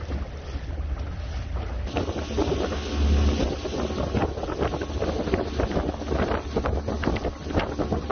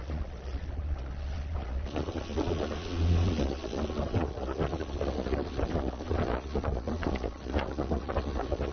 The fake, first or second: second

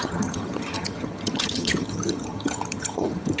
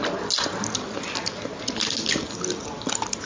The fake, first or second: first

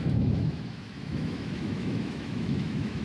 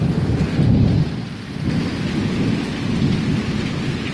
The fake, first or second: first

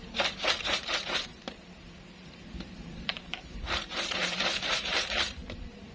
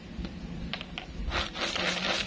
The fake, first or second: first